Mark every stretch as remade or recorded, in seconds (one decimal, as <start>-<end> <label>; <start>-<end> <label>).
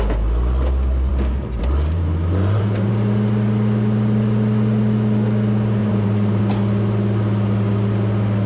0.0-1.1 recorded; 1.1-2.9 remade; 2.9-5.8 recorded; 5.8-6.4 remade; 6.4-8.5 recorded